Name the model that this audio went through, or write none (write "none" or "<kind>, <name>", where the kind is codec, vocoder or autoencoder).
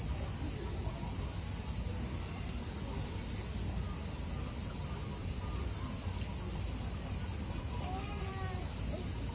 none